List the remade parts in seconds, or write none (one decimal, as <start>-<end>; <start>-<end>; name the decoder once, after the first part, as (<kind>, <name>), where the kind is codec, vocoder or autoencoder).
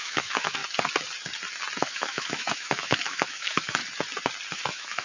0.0-0.6 (autoencoder, DAC-VAE); 1.8-3.8; 4.5-5.0